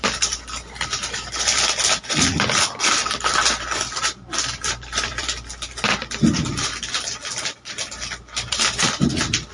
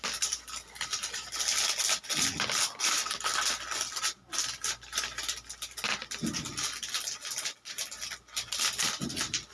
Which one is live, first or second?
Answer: second